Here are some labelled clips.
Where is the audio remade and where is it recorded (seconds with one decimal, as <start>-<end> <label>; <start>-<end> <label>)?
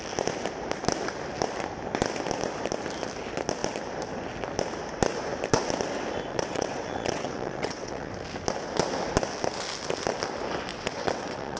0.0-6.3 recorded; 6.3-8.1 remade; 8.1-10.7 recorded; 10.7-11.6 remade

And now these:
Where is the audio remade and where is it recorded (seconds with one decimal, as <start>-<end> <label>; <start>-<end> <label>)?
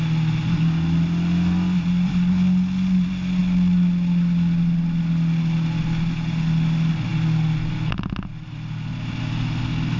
0.0-10.0 recorded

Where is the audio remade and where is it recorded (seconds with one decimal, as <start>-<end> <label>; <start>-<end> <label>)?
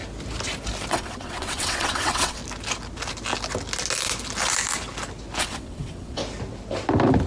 0.0-0.9 recorded; 0.9-2.4 remade; 2.4-5.4 recorded; 5.4-6.2 remade; 6.2-7.3 recorded